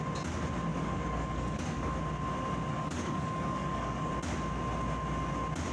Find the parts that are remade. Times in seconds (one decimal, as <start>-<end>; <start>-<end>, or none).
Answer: 0.7-2.0; 2.7-4.1